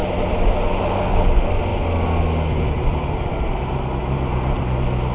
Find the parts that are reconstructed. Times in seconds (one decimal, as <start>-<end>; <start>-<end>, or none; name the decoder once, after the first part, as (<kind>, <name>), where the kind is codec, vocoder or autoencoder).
none